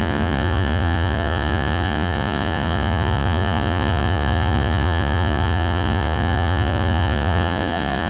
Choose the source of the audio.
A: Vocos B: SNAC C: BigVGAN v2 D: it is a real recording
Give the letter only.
A